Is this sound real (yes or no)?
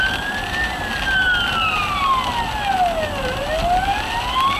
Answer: yes